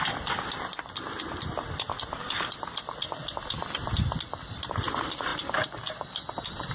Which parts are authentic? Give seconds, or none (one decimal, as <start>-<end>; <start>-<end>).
0.0-6.7